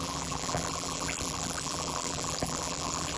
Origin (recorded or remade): remade